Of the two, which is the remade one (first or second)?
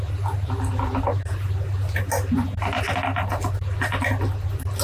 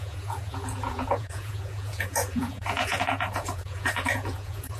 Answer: second